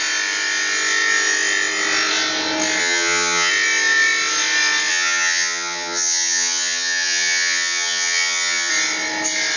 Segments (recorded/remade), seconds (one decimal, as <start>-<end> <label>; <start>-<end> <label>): 0.0-2.8 recorded; 2.8-3.5 remade; 3.5-4.9 recorded; 4.9-8.7 remade; 8.7-9.6 recorded